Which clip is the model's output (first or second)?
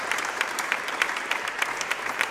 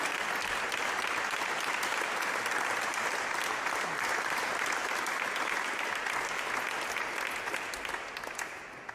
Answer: first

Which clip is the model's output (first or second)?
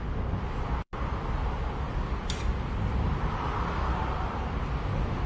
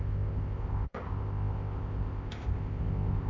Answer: second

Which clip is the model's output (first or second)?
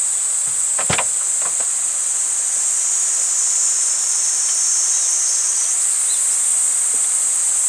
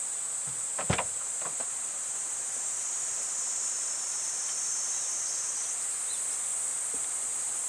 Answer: second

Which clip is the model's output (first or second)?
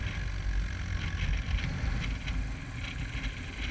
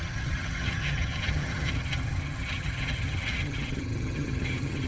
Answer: second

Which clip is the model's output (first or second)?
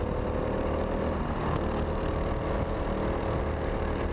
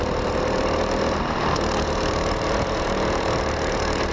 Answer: second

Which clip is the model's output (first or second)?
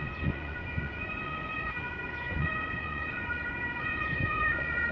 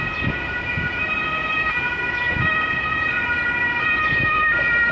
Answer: first